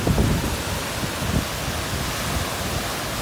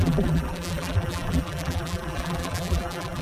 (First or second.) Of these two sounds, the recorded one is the first